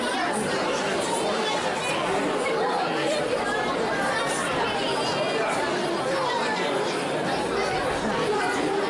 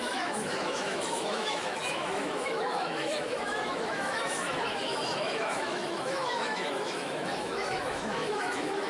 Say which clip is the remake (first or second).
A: second